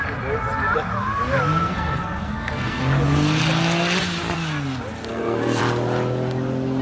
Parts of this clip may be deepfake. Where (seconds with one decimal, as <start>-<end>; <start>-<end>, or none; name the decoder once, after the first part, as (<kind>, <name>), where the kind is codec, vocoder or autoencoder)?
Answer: 1.6-2.8 (codec, SNAC); 5.1-5.6

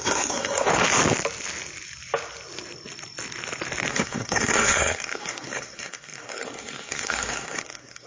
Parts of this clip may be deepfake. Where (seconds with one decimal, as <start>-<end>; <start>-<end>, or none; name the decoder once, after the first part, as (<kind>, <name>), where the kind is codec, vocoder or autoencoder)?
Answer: 0.0-0.7 (codec, SNAC); 3.9-8.1

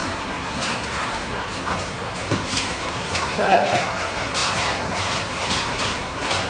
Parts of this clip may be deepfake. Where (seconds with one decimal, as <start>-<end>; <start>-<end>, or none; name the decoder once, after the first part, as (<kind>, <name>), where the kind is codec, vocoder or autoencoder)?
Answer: 0.0-6.5 (codec, SNAC)

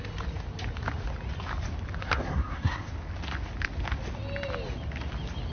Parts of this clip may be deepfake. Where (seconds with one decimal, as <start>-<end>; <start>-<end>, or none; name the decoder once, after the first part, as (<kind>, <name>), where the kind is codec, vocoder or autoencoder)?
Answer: 2.0-2.9 (codec, SNAC)

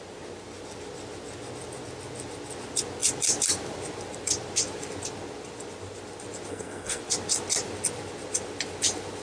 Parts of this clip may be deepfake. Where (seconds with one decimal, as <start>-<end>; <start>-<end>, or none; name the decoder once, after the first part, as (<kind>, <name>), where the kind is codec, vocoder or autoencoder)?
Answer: 6.5-7.0 (codec, SNAC)

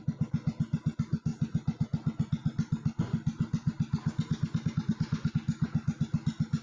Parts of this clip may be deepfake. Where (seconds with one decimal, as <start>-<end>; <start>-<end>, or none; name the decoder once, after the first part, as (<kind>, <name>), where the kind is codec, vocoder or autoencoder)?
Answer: none